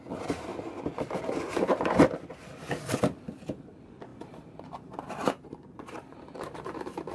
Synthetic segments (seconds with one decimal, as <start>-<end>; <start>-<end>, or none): 4.1-7.1

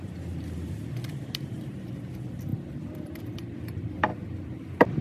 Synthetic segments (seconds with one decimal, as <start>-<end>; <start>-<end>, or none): 2.5-3.2; 4.1-5.0

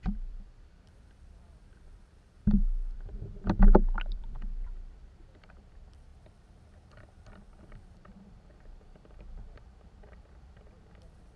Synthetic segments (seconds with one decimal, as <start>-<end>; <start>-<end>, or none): 0.0-3.3; 4.1-6.1; 7.6-11.4

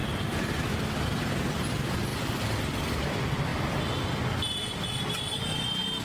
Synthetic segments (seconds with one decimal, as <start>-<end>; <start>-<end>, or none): 2.1-2.6; 3.5-5.4

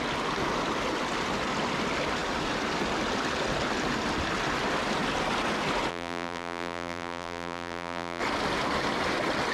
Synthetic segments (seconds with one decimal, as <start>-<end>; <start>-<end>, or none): 5.9-8.2

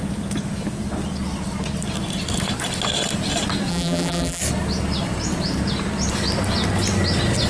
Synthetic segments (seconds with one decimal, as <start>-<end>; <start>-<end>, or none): 3.7-4.4

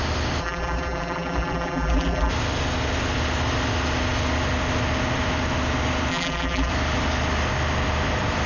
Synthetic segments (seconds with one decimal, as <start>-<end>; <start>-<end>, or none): 0.4-2.3; 6.1-6.7